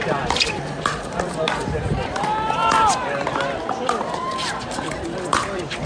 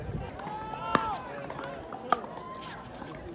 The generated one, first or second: first